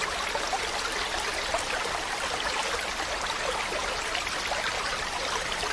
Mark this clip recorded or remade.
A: recorded